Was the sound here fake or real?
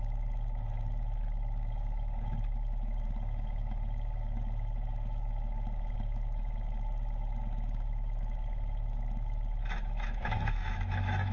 fake